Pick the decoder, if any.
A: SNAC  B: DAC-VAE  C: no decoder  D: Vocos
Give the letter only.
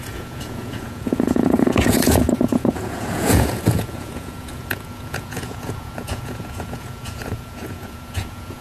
D